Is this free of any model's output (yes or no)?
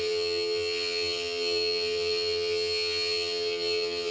no